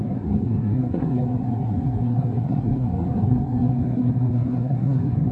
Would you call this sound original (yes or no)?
no